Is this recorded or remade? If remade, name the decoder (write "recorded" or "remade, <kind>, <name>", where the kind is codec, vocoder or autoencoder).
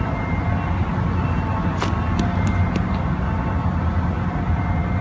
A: recorded